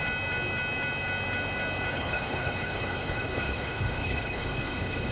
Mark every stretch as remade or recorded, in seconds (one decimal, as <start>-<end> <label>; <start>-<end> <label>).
0.0-1.9 recorded; 1.9-5.1 remade